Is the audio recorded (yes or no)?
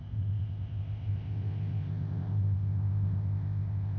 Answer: no